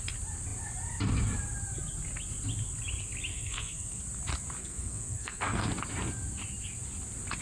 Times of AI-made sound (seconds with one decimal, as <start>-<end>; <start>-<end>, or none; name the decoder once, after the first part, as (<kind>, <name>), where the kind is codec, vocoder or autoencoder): 3.3-4.0 (codec, SNAC); 4.6-5.7